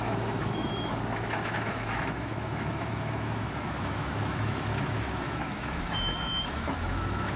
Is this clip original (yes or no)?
no